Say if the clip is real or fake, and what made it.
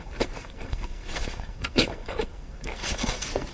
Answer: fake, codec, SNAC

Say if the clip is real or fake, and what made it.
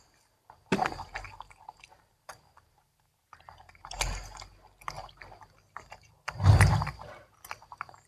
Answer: real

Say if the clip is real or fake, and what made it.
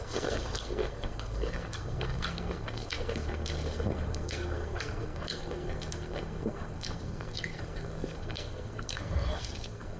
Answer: fake, codec, SNAC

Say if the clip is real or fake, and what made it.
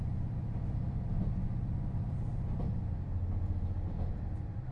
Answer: real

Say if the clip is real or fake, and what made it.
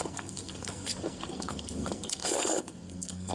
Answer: fake, codec, SNAC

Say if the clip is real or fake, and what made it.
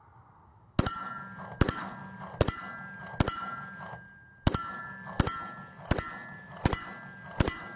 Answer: real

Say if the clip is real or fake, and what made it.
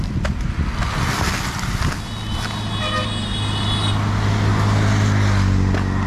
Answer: real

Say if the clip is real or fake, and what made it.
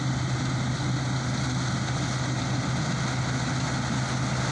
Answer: real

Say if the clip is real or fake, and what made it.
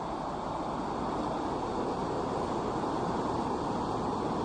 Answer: real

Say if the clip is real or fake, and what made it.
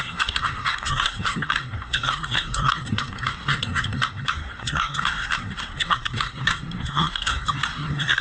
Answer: fake, codec, SNAC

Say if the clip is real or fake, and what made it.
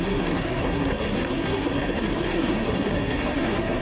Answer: fake, codec, SNAC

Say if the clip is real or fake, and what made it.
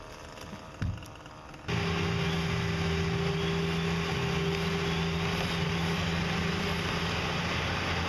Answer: real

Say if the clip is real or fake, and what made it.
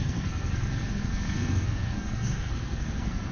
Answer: fake, codec, SNAC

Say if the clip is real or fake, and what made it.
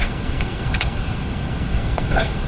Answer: fake, codec, SNAC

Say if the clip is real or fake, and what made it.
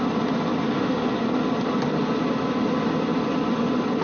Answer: real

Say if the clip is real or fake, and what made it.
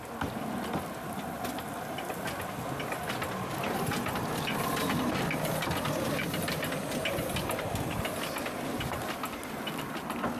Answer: real